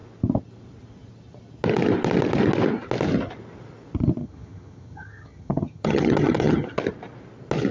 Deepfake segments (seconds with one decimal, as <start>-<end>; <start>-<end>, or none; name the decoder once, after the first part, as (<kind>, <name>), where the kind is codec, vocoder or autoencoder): 4.2-6.8 (vocoder, HiFi-GAN)